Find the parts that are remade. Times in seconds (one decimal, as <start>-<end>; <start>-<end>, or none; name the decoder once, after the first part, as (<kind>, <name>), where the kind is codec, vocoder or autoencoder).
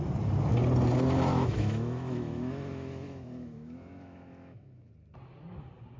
1.3-4.9 (autoencoder, DAC-VAE)